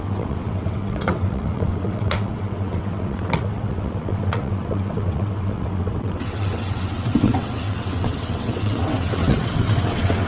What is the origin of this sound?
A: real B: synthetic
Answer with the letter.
B